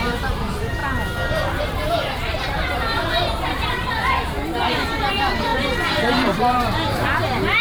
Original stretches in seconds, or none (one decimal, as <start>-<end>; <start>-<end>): 0.8-1.6